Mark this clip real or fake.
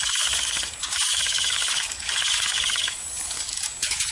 fake